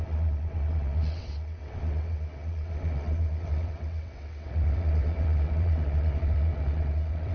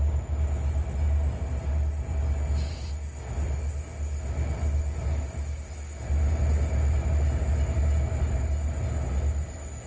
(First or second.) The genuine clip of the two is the second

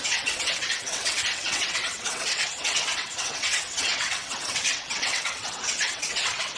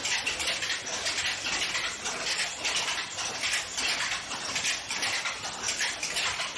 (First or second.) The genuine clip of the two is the second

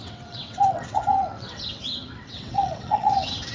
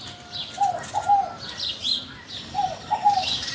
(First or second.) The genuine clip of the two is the second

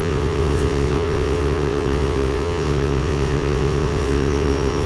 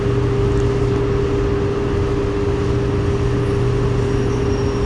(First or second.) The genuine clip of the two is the second